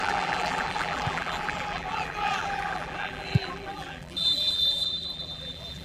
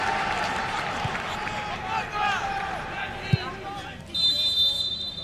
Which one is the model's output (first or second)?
first